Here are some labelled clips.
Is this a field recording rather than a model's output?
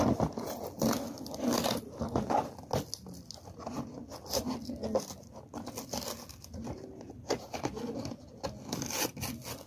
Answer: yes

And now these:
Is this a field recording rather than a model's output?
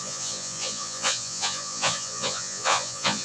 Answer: no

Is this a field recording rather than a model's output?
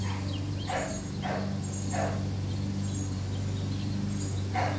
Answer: yes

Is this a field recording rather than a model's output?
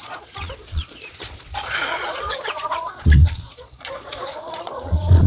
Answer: no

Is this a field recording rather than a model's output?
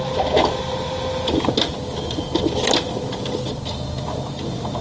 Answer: yes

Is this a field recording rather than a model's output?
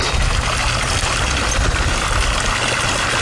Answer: yes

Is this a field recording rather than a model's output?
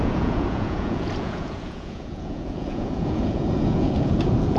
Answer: no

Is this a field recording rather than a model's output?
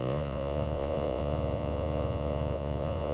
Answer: no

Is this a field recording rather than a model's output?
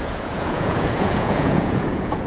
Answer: no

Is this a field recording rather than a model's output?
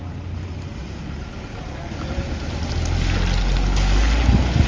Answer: yes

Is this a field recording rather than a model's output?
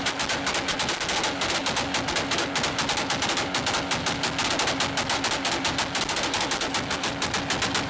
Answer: yes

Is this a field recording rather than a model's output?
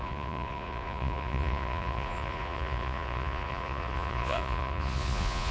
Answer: no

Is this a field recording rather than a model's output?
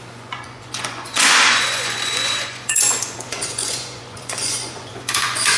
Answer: no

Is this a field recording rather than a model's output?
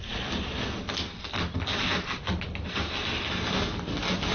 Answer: yes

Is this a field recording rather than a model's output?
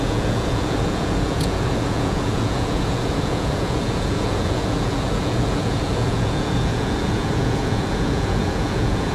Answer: no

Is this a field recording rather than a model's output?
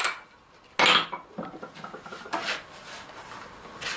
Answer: yes